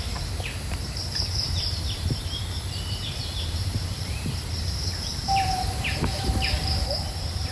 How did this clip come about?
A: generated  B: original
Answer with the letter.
A